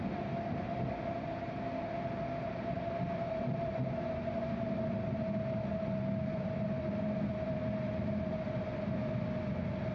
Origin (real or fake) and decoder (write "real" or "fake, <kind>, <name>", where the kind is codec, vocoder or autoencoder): real